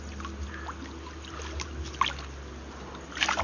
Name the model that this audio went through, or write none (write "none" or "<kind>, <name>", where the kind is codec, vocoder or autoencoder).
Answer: none